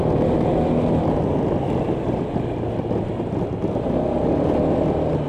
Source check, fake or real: real